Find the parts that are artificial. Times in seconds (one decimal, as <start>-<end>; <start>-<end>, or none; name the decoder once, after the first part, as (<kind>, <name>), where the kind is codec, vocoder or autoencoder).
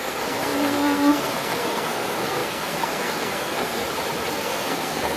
0.0-3.8 (codec, SNAC); 4.3-5.2